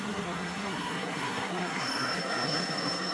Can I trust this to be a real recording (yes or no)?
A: no